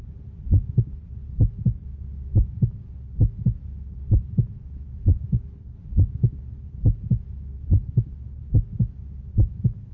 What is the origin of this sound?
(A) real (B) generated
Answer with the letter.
A